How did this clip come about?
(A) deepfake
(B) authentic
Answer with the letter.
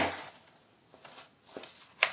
B